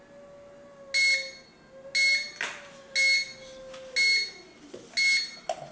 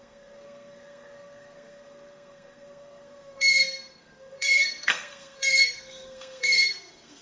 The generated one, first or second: second